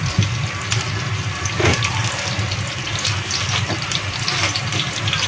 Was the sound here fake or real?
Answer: real